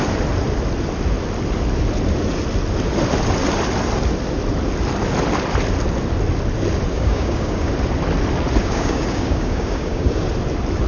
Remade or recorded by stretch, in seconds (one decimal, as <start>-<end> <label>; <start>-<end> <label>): 0.0-6.9 recorded; 6.9-7.7 remade; 7.7-8.6 recorded; 8.6-10.3 remade; 10.3-10.9 recorded